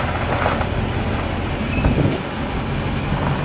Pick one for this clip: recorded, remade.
recorded